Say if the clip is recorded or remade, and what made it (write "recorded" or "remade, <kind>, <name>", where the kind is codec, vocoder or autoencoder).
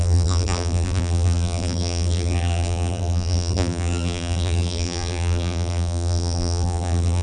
remade, vocoder, BigVGAN v2